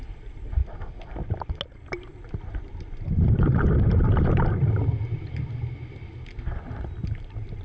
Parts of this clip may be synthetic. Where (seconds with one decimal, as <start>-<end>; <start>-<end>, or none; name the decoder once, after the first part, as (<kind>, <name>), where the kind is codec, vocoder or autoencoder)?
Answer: none